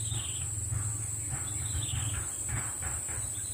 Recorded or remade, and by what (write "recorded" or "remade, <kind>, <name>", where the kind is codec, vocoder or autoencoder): recorded